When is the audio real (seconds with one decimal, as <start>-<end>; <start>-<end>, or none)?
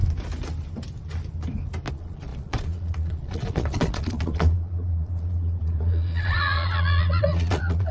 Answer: 0.0-1.9